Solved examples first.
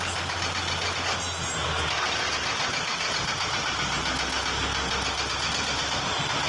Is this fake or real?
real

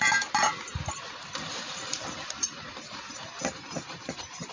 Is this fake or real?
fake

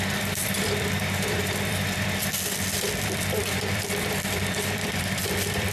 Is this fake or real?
fake